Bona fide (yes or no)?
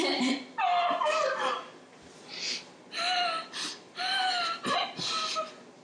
yes